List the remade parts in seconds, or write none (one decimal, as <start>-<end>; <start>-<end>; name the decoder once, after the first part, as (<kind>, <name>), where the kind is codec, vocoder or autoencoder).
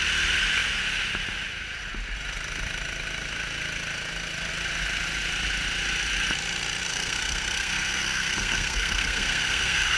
6.9-10.0 (codec, SNAC)